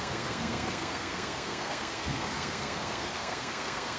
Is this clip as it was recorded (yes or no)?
no